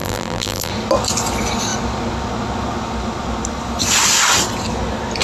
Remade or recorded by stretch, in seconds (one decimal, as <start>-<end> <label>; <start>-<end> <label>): 0.0-0.7 remade; 0.7-5.2 recorded